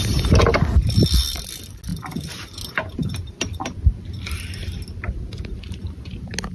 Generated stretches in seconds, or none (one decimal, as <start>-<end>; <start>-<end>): 1.9-5.4